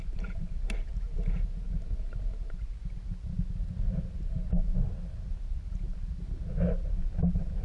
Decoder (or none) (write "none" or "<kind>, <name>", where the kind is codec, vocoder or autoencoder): none